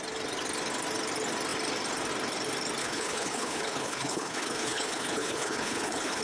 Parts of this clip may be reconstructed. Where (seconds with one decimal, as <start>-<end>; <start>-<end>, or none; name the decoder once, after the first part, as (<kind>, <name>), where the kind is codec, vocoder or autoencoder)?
2.8-6.2 (codec, HILCodec)